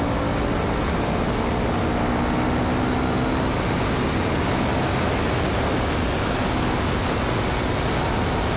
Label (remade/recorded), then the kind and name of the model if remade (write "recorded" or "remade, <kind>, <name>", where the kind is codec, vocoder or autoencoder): recorded